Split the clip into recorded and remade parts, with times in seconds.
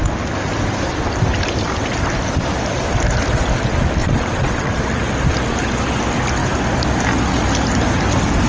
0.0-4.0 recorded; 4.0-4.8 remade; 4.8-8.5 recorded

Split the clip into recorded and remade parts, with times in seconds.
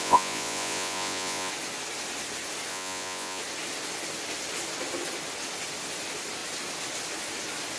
0.0-1.5 remade; 1.5-2.7 recorded; 2.7-3.4 remade; 3.4-7.8 recorded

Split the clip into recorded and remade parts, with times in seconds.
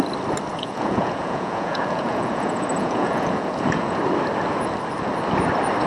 0.0-0.5 recorded; 0.5-4.0 remade; 4.0-5.9 recorded